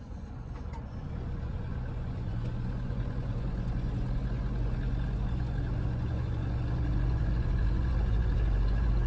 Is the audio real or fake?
fake